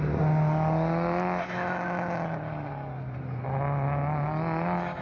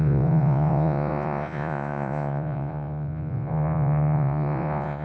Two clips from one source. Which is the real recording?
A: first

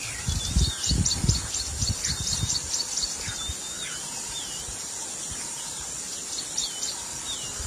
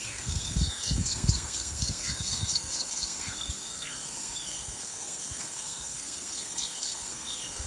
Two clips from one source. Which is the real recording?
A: first